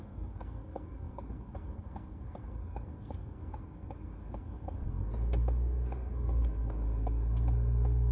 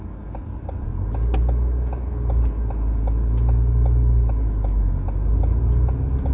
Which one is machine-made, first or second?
first